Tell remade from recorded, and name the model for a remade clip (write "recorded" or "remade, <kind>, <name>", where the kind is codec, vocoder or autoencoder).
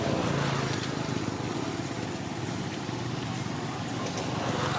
recorded